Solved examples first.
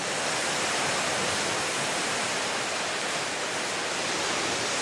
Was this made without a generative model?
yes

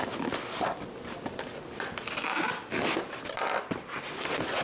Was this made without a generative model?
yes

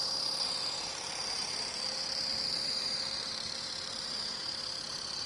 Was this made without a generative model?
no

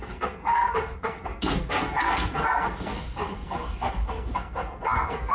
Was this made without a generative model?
no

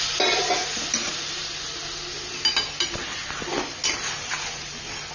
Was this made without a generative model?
yes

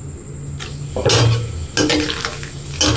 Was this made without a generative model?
yes